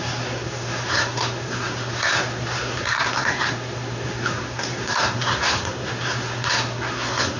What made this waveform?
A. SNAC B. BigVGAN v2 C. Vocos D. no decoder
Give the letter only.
A